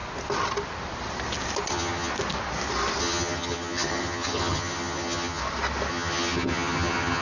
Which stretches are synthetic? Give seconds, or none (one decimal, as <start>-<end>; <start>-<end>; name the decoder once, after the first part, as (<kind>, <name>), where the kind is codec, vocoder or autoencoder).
1.7-2.1 (vocoder, HiFi-GAN); 3.0-5.4; 5.9-7.2